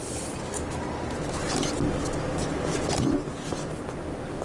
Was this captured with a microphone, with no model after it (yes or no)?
yes